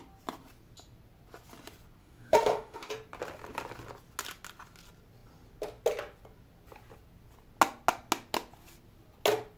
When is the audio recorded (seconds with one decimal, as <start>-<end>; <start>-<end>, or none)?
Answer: 0.0-2.0; 2.9-9.6